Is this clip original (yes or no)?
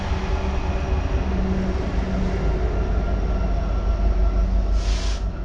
yes